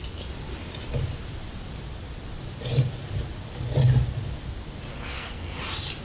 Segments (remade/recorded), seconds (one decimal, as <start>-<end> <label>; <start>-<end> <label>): 0.0-4.9 recorded; 4.9-5.6 remade; 5.6-6.0 recorded